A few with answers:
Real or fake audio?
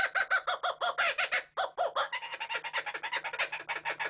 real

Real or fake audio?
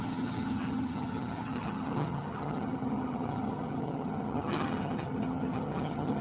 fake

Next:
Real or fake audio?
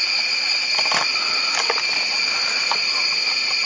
real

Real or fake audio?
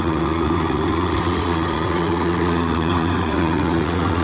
fake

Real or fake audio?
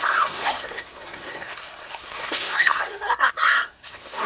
fake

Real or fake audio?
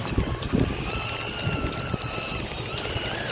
fake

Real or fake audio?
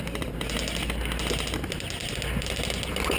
real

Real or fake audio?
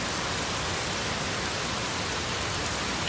real